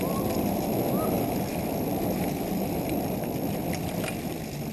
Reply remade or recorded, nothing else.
recorded